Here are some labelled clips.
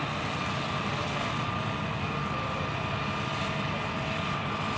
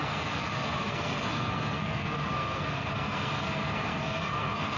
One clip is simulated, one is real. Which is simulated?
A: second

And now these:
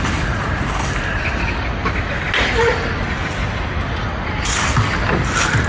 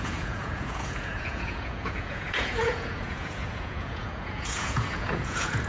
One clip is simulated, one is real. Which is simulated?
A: second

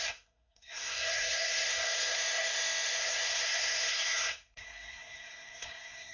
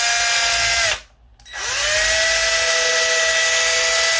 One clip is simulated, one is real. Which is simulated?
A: first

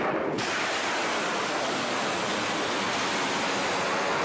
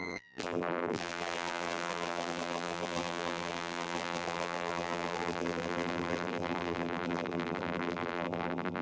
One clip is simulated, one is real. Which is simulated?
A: second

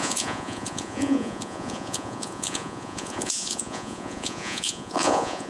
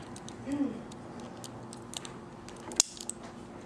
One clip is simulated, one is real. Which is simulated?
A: first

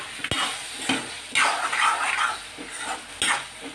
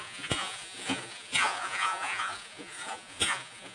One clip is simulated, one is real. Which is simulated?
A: second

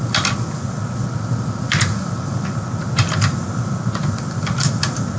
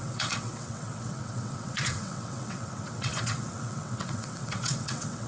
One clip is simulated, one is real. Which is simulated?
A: second